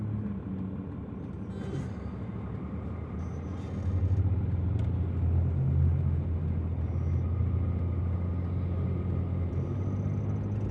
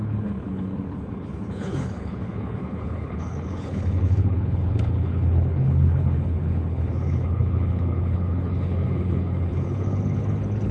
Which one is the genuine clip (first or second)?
first